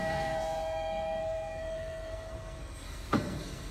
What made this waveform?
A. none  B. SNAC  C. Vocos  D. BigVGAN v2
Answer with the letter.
B